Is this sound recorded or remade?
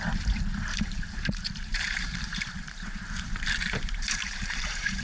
remade